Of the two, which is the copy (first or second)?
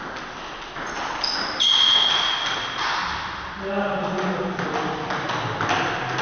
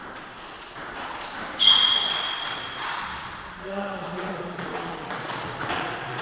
second